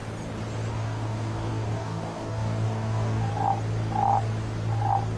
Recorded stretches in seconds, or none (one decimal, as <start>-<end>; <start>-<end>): 0.0-0.7; 3.3-5.2